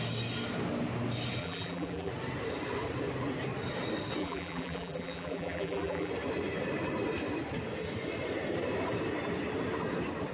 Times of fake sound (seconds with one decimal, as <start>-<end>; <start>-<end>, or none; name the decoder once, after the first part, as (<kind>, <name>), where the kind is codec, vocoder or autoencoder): 1.4-2.1 (vocoder, BigVGAN v2); 4.2-6.1